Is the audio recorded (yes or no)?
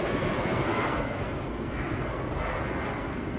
no